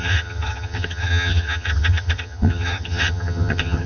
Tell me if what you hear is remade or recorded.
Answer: remade